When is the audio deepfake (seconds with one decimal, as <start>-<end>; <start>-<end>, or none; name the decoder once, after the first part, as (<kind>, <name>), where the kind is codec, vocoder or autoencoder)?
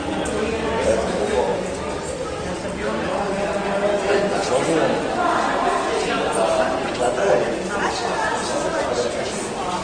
none